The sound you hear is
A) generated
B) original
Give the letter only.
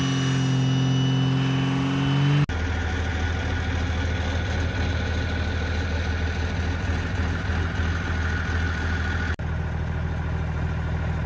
B